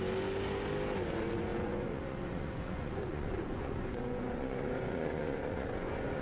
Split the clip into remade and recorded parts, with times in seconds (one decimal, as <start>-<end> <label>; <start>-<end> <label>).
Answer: 0.0-1.1 recorded; 1.1-6.2 remade